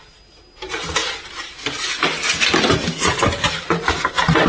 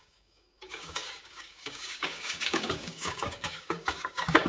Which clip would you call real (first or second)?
first